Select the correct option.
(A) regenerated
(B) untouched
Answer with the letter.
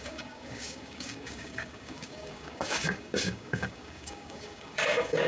A